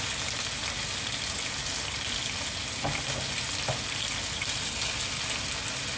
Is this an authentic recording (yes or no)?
yes